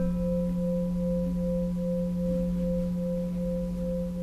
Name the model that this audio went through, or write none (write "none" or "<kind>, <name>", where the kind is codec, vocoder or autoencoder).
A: none